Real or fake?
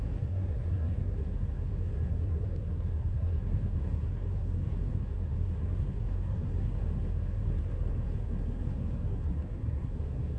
fake